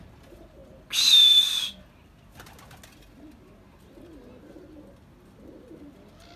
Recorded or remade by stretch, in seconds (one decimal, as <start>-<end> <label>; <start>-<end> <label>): 0.0-6.4 recorded